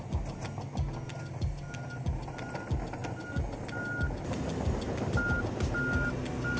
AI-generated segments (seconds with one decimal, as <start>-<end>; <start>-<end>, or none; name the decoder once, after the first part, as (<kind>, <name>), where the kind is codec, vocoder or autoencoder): none